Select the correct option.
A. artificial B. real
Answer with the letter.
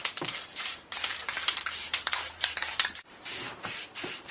A